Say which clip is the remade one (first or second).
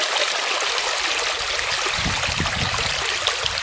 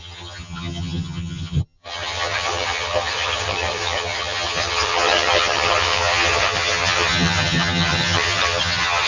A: second